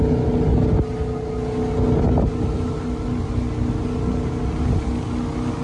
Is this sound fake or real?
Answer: real